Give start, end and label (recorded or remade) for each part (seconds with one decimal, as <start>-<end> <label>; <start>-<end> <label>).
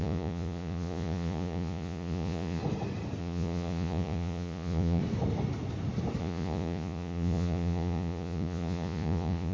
0.0-2.6 remade; 2.6-3.2 recorded; 3.2-5.0 remade; 5.0-6.2 recorded; 6.2-9.5 remade